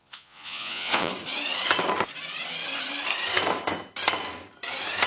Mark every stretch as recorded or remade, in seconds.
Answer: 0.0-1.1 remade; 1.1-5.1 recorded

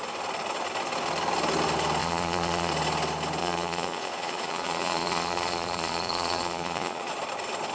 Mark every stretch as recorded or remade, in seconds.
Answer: 0.0-2.0 recorded; 2.0-2.7 remade; 2.7-3.4 recorded; 3.4-7.1 remade; 7.1-7.7 recorded

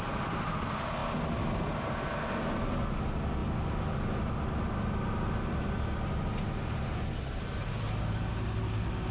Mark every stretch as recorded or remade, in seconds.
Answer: 0.0-9.1 recorded

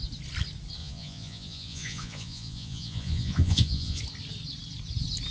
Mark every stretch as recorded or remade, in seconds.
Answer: 0.0-0.8 recorded; 0.8-4.0 remade; 4.0-5.3 recorded

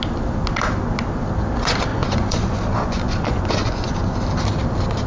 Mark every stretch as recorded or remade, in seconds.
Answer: 0.0-1.9 recorded; 1.9-4.1 remade; 4.1-5.1 recorded

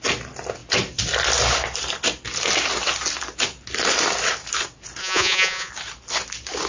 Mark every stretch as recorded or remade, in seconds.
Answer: 0.0-5.0 recorded; 5.0-5.7 remade; 5.7-6.7 recorded

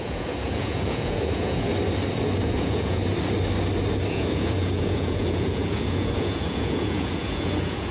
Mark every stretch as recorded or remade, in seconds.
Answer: 0.0-1.7 remade; 1.7-2.4 recorded; 2.4-3.0 remade; 3.0-4.1 recorded; 4.1-7.9 remade